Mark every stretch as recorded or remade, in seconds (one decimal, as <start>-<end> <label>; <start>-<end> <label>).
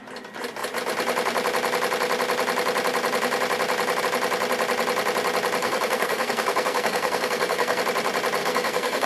0.0-5.6 recorded; 5.6-7.8 remade; 7.8-8.4 recorded; 8.4-9.1 remade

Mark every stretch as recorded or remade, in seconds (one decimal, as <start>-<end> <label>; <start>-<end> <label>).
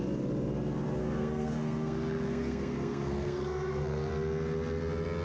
0.0-1.0 recorded; 1.0-4.1 remade; 4.1-5.2 recorded